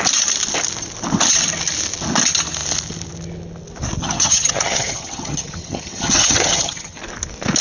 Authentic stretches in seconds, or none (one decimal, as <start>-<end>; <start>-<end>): 0.0-4.0; 7.0-7.6